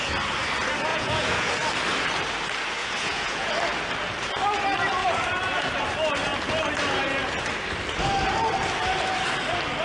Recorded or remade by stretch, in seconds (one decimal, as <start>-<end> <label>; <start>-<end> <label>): 0.0-0.9 recorded; 0.9-1.5 remade; 1.5-2.8 recorded; 2.8-3.5 remade; 3.5-9.8 recorded